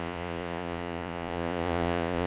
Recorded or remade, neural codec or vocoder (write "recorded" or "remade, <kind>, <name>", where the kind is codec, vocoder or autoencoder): remade, vocoder, Vocos